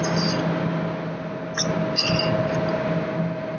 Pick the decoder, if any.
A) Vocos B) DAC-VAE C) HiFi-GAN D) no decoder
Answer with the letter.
D